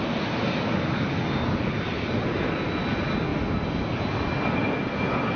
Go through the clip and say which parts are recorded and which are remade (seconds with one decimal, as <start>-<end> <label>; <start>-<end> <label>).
0.0-5.4 recorded